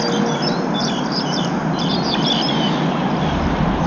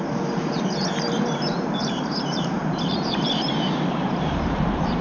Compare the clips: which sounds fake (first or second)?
second